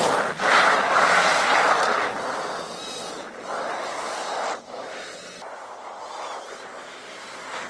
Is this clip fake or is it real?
real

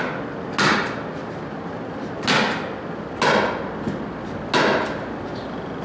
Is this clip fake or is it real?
real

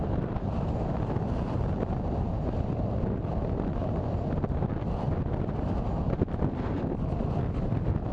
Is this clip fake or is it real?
real